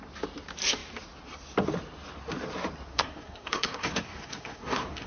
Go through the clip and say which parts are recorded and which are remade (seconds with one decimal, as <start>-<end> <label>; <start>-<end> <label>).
0.0-2.9 recorded; 2.9-5.1 remade